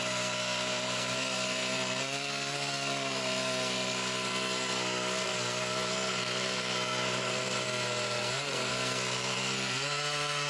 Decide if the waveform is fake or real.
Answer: fake